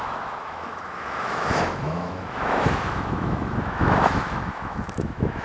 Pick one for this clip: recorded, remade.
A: remade